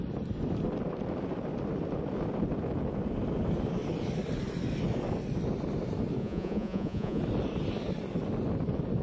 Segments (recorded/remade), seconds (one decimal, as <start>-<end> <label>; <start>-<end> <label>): 0.0-6.2 recorded; 6.2-7.2 remade; 7.2-9.0 recorded